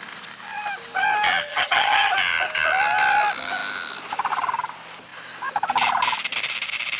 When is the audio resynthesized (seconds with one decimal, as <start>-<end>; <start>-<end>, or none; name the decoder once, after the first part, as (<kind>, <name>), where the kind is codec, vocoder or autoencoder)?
1.5-2.1 (vocoder, HiFi-GAN)